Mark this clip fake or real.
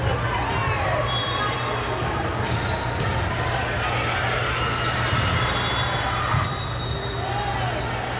real